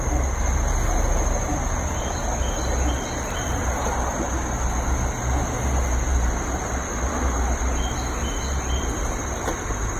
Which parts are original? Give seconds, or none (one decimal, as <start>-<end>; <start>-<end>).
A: 0.0-10.0